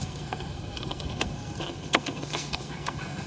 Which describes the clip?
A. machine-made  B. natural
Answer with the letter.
A